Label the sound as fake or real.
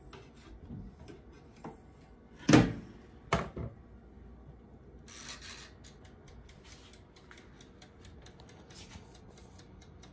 real